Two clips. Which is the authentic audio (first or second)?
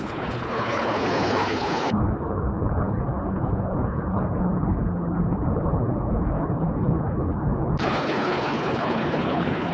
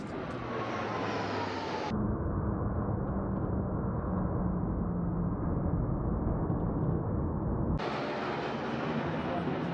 second